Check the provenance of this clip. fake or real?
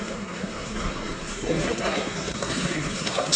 fake